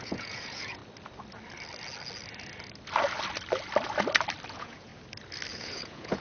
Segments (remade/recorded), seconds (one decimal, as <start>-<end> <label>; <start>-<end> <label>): 0.0-0.8 remade; 0.8-4.5 recorded; 4.5-4.9 remade; 4.9-5.5 recorded; 5.5-6.2 remade